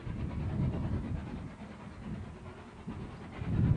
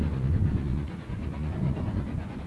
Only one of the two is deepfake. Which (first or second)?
second